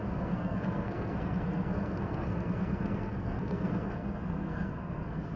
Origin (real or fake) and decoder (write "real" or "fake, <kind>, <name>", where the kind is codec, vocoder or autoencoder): fake, codec, SNAC